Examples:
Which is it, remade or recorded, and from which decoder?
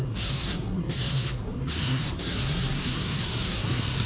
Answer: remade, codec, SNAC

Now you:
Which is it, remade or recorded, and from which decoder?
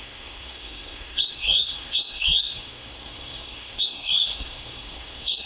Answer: remade, codec, SNAC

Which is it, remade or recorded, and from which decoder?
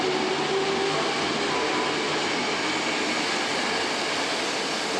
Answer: recorded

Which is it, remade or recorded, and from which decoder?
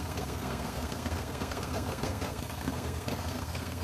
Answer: remade, codec, SNAC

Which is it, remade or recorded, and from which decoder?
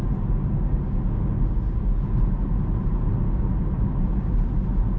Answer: recorded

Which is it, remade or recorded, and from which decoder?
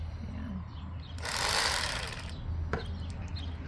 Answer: recorded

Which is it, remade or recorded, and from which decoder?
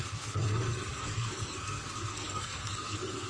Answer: remade, codec, SNAC